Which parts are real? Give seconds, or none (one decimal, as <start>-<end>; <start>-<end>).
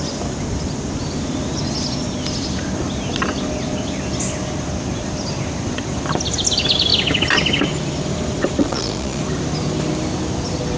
0.0-8.6; 9.2-10.8